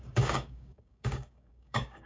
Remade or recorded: remade